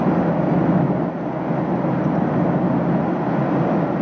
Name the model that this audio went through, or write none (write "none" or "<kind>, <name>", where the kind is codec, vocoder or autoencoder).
none